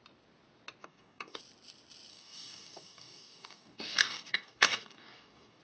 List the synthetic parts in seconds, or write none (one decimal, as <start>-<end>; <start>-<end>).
0.8-1.4; 2.1-5.6